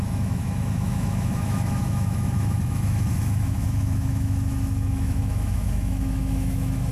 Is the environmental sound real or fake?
fake